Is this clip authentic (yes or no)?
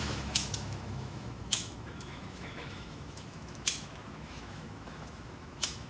no